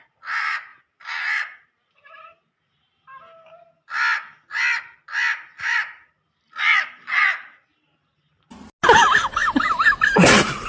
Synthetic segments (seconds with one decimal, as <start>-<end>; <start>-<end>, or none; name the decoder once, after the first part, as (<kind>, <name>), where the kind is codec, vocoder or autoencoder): none